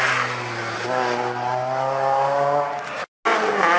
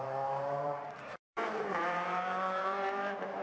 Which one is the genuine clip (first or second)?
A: first